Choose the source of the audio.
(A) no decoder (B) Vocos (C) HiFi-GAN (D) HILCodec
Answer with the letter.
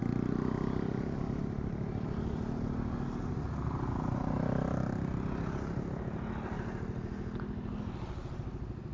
A